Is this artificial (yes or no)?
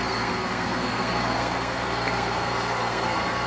yes